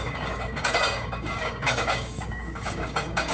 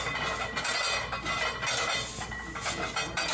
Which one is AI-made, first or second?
first